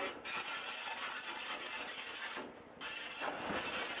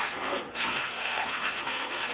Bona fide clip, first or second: first